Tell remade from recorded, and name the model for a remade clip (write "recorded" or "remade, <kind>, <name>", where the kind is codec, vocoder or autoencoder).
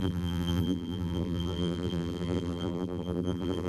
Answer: remade, vocoder, BigVGAN v2